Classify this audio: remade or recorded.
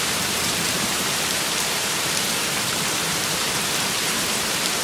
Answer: remade